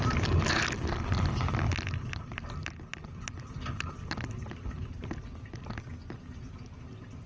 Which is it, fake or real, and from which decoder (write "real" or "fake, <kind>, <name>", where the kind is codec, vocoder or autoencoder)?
real